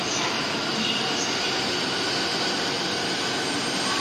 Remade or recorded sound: recorded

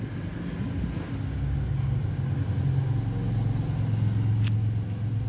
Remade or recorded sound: recorded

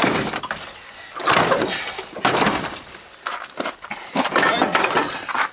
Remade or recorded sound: recorded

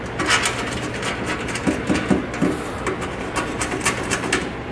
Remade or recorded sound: recorded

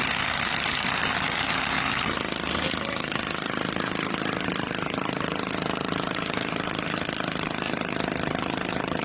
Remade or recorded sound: recorded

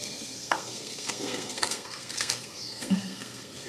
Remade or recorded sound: remade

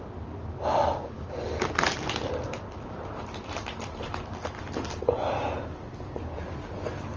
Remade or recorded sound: recorded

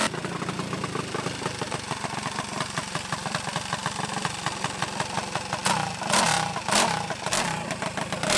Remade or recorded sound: recorded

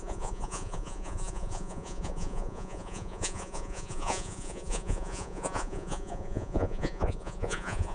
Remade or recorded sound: remade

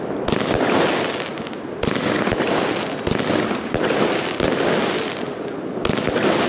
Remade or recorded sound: recorded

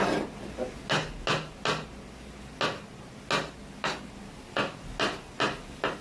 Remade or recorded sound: recorded